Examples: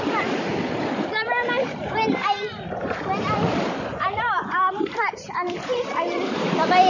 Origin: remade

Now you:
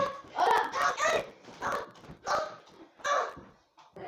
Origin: recorded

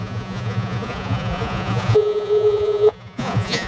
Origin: remade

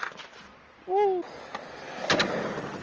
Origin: recorded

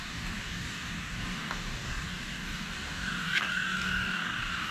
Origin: remade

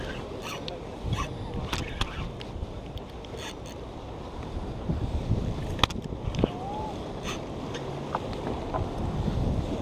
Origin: recorded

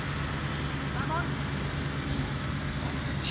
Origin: recorded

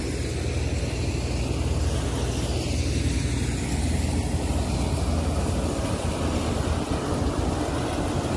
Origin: recorded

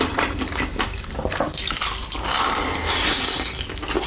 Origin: recorded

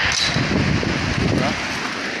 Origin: recorded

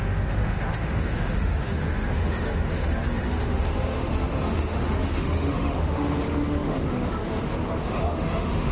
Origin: remade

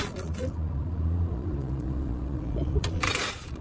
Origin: remade